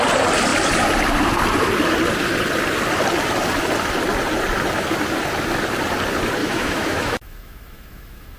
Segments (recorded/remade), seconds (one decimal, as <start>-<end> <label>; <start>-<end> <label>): 0.0-6.4 recorded; 6.4-8.4 remade